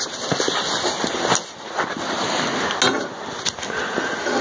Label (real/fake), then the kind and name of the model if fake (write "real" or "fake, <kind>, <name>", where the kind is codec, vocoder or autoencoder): real